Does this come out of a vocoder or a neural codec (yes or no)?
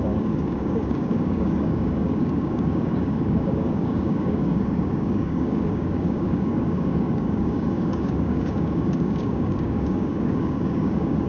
yes